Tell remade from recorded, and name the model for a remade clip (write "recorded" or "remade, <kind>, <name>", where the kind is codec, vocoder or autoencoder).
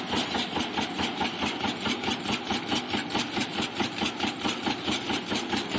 recorded